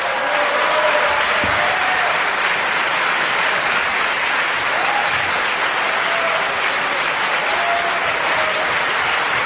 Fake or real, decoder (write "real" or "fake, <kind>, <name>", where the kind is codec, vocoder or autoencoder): real